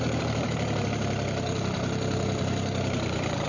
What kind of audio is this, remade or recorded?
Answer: remade